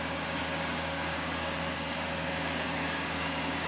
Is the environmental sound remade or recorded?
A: remade